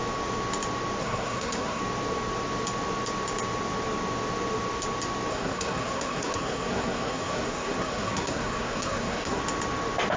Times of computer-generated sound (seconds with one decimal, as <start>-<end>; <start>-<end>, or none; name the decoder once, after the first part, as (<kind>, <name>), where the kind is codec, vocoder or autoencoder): 1.0-1.8 (codec, SNAC); 5.3-9.4

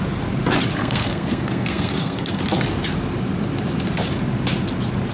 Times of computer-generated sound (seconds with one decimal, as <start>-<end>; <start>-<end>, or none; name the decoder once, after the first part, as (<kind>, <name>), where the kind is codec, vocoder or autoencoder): 0.8-2.4 (codec, SNAC)

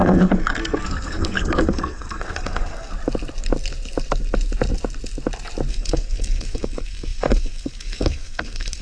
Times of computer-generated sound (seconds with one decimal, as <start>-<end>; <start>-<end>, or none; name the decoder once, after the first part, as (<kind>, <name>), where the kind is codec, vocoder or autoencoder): 0.0-2.9 (codec, SNAC); 5.7-8.8

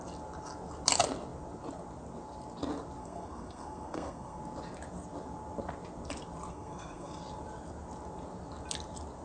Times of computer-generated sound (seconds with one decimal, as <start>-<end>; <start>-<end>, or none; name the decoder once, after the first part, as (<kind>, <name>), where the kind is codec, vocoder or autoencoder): 3.0-4.4 (codec, SNAC); 6.5-7.2

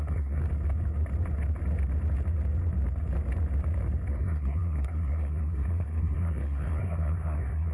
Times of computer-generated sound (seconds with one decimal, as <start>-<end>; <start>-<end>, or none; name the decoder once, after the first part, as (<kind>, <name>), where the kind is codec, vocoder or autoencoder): 0.0-0.4 (codec, SNAC); 4.1-7.7

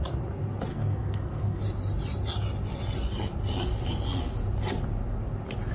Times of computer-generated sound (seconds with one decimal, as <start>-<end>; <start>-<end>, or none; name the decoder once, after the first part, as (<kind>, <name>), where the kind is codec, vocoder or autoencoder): 0.7-1.6 (codec, SNAC)

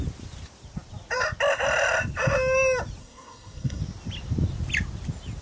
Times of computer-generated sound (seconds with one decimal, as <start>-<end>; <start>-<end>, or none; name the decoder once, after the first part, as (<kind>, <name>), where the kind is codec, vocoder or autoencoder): 3.0-3.8 (codec, SNAC)